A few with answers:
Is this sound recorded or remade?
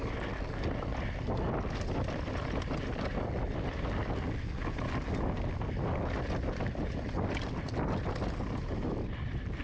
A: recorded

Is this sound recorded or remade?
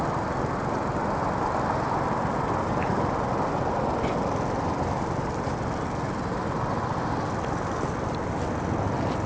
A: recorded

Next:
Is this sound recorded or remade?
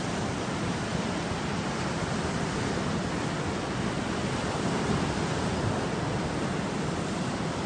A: recorded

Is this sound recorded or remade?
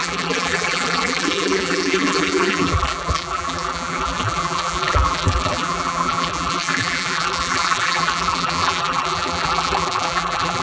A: remade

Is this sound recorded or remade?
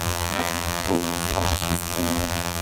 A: remade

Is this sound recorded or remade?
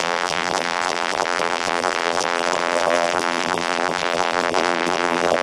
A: remade